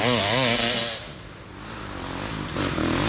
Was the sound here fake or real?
real